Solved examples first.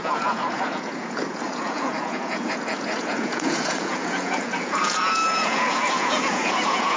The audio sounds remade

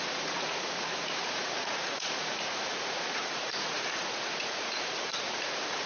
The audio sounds remade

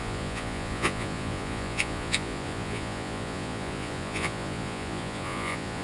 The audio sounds remade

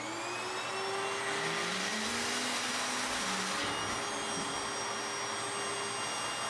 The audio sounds recorded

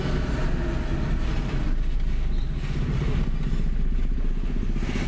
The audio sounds recorded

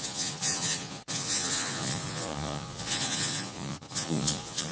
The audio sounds remade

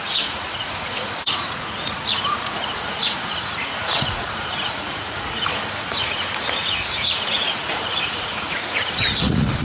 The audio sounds remade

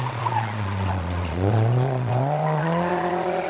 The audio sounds remade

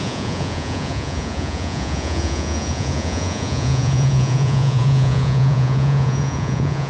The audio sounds remade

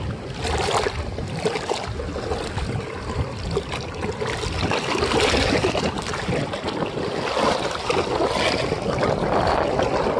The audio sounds recorded